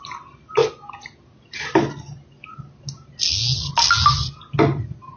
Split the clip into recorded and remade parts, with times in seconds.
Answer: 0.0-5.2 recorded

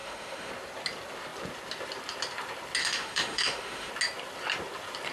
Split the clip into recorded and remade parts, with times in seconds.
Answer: 0.0-0.5 remade; 0.5-2.8 recorded; 2.8-3.9 remade; 3.9-5.1 recorded

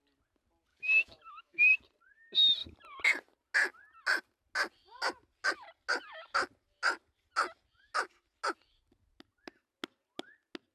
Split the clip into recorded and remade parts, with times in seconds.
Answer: 0.0-0.7 recorded; 0.7-1.7 remade; 1.7-10.7 recorded